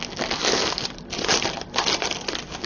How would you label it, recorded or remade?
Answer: recorded